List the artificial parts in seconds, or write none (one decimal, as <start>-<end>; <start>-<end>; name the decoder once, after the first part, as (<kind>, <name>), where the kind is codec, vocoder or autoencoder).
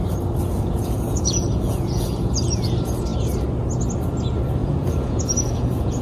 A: 0.5-2.7 (vocoder, Vocos); 4.6-6.0